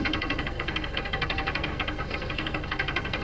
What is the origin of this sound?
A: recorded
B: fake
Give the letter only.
B